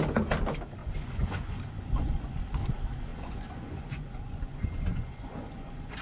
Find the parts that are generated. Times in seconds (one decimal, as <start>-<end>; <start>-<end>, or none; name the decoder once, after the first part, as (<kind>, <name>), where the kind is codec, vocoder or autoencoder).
0.8-2.4 (vocoder, Vocos); 3.1-6.0